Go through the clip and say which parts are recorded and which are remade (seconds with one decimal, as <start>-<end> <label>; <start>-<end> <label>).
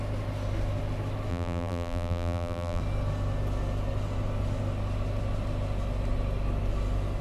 0.0-1.3 recorded; 1.3-2.8 remade; 2.8-7.2 recorded